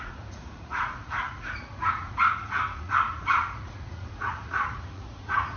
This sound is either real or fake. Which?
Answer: fake